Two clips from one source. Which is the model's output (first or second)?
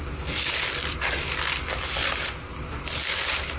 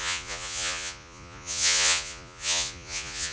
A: second